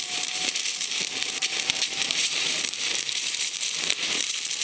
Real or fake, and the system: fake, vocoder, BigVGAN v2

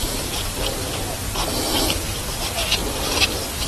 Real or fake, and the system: fake, vocoder, BigVGAN v2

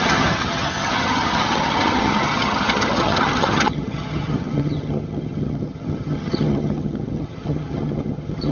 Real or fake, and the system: fake, vocoder, HiFi-GAN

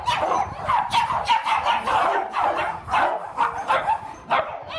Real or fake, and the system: fake, vocoder, BigVGAN v2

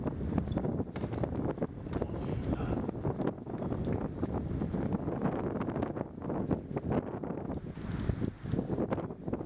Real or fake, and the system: real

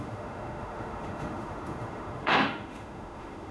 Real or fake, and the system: fake, autoencoder, DAC-VAE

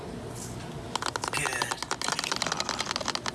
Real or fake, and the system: real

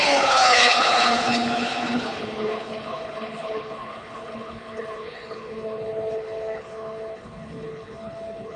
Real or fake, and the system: fake, codec, HILCodec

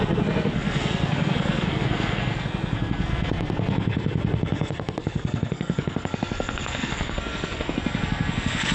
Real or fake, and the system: fake, codec, SNAC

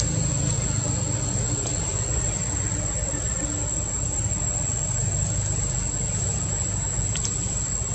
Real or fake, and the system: real